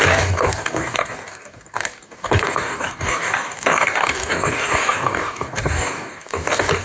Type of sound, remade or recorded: remade